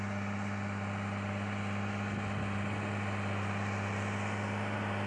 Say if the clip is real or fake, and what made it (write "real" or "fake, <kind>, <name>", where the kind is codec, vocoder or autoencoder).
real